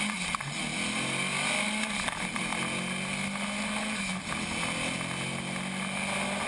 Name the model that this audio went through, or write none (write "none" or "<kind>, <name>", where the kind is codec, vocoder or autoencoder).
none